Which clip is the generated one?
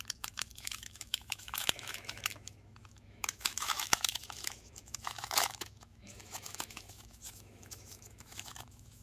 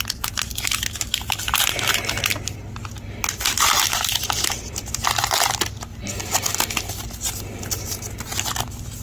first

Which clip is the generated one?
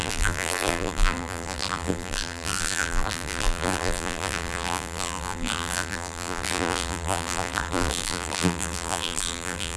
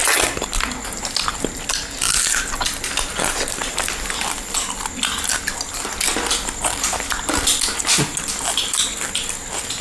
first